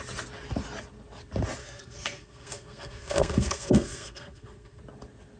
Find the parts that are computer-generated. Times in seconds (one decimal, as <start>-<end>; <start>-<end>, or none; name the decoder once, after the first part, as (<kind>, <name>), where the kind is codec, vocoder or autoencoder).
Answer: 1.6-4.8 (codec, SNAC)